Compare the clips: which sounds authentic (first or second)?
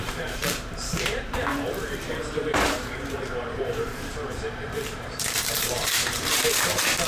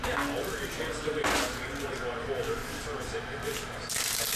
second